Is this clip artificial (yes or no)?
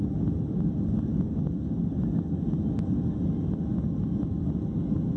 no